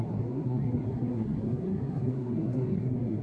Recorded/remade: remade